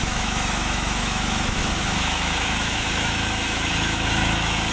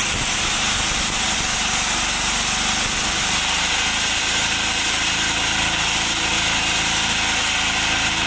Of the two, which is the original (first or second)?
second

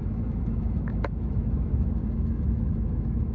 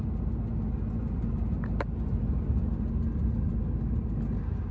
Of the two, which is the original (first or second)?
second